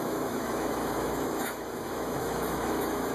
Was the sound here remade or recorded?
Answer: remade